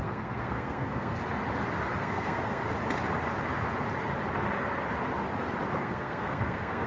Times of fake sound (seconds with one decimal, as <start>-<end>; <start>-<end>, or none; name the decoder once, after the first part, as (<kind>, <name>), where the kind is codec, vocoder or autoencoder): 0.0-1.2 (codec, SNAC); 2.0-2.6; 5.8-6.9